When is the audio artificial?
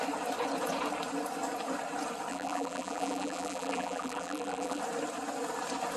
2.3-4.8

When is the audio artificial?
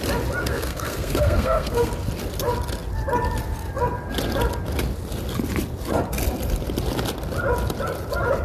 0.4-1.9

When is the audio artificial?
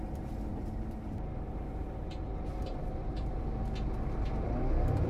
0.5-3.4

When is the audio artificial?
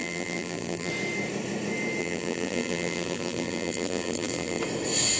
0.0-0.9; 2.0-4.6